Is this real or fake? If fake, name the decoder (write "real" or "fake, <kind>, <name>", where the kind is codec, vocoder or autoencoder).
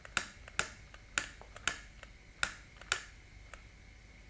real